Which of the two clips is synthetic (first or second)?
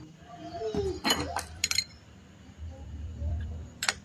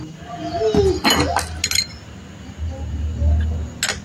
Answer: first